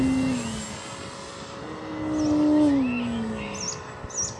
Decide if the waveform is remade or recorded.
recorded